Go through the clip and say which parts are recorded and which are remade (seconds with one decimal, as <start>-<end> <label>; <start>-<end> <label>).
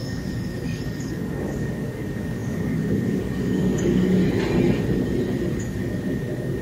0.0-4.2 remade; 4.2-5.6 recorded; 5.6-6.6 remade